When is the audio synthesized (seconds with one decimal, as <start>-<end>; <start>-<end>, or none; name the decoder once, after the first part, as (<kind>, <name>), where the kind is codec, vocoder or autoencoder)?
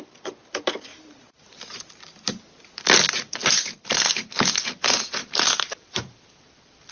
0.9-2.5 (vocoder, BigVGAN v2); 3.4-4.2; 5.2-6.4